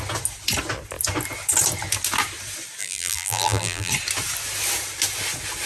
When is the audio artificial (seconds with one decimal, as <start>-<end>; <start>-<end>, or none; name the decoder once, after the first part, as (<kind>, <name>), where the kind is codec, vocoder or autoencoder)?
2.8-3.9 (vocoder, BigVGAN v2)